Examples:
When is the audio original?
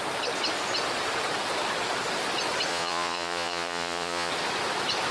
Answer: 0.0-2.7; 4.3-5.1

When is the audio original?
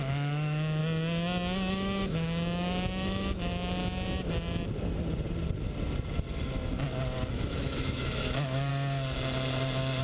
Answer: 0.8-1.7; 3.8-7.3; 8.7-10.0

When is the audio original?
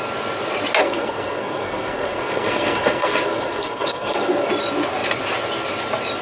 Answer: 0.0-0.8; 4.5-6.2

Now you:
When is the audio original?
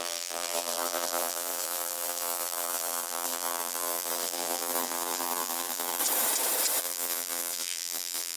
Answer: 6.0-6.8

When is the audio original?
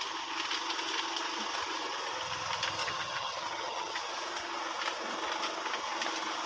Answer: 0.0-2.8; 4.0-6.5